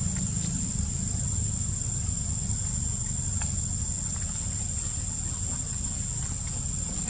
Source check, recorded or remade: recorded